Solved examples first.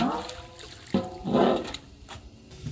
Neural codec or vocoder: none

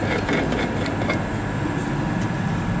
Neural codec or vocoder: none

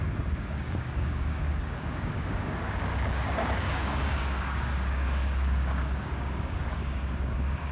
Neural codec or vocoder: codec, DAC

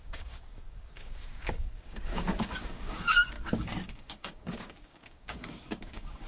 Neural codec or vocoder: codec, DAC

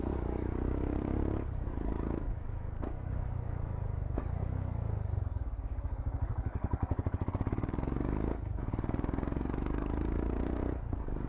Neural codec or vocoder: codec, DAC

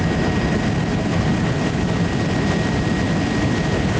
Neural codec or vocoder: none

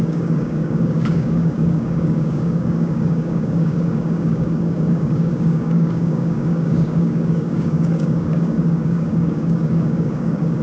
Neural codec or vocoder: codec, DAC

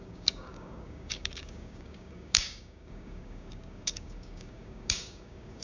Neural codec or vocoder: codec, DAC